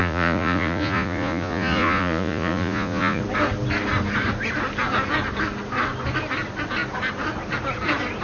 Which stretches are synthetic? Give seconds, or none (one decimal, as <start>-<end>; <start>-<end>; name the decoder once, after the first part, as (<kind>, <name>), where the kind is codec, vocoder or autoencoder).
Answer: 0.0-3.2 (vocoder, Vocos)